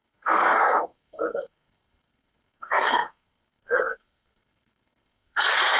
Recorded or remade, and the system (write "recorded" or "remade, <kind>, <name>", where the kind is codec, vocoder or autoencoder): remade, codec, SNAC